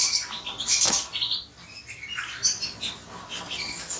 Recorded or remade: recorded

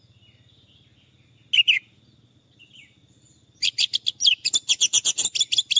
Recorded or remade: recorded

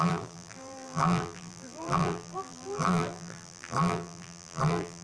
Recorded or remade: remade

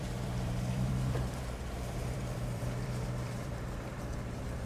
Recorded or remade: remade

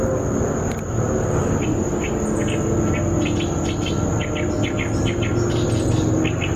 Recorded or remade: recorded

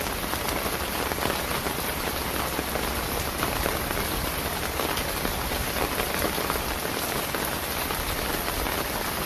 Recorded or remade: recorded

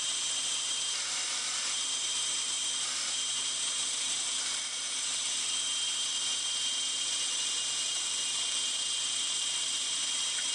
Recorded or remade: remade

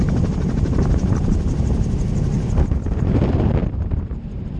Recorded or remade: remade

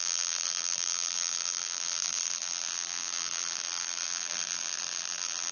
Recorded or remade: remade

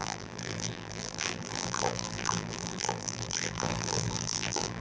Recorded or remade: remade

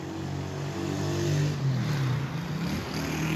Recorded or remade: recorded